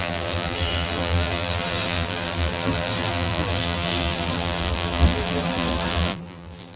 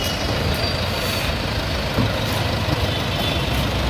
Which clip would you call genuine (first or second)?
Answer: second